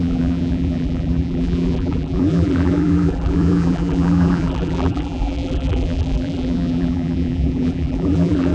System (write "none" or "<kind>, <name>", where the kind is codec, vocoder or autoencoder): vocoder, BigVGAN v2